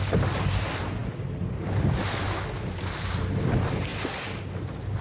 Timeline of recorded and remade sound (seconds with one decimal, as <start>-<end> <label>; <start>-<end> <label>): 0.0-5.0 recorded